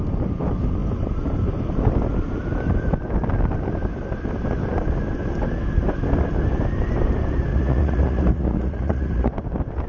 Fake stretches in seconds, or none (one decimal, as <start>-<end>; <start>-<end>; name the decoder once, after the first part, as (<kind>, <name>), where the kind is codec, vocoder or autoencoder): 7.5-9.3 (vocoder, Vocos)